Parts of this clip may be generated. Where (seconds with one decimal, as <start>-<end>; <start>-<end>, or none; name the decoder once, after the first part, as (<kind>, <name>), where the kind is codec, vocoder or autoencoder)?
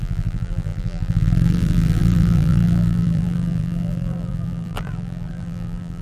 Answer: 0.0-6.0 (vocoder, BigVGAN v2)